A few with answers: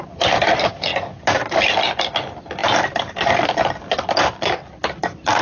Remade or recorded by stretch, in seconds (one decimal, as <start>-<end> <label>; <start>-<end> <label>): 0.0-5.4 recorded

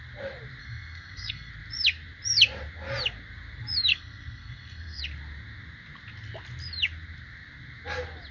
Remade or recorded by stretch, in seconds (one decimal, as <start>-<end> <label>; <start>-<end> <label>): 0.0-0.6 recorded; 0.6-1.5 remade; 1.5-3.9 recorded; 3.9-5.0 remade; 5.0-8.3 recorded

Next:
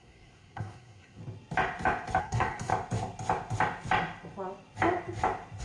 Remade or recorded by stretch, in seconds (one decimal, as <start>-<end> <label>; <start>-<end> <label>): 0.0-1.2 remade; 1.2-2.2 recorded; 2.2-2.7 remade; 2.7-5.6 recorded